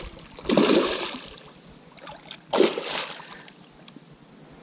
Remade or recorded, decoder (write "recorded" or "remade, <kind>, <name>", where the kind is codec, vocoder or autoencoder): recorded